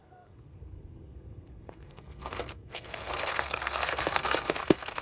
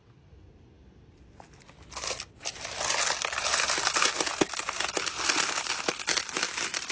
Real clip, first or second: second